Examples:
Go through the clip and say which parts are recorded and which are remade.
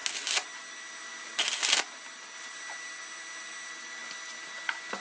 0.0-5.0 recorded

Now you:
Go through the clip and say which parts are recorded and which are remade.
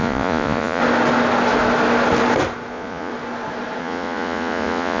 0.0-0.8 remade; 0.8-2.7 recorded; 2.7-3.1 remade; 3.1-3.8 recorded; 3.8-5.0 remade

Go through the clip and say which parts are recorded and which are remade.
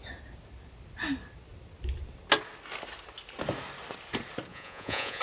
0.0-4.5 recorded; 4.5-5.2 remade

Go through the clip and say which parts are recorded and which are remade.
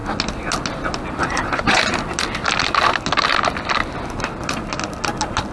0.0-1.2 recorded; 1.2-1.8 remade; 1.8-5.5 recorded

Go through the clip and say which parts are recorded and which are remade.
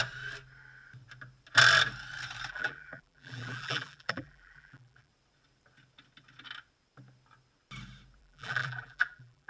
0.0-2.5 recorded; 2.5-5.1 remade; 5.1-8.2 recorded; 8.2-9.5 remade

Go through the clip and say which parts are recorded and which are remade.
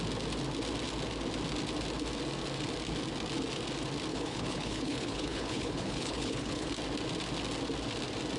0.0-4.1 recorded; 4.1-6.7 remade; 6.7-8.4 recorded